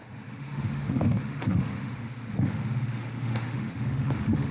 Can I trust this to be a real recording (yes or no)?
no